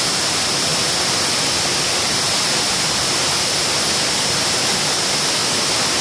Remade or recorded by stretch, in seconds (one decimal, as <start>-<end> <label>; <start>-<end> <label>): 0.0-6.0 recorded